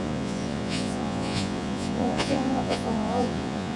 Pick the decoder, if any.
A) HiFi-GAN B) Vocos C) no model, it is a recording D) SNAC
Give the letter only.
B